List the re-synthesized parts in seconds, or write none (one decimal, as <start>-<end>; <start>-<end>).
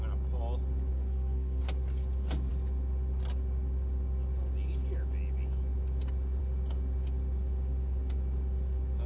0.9-1.6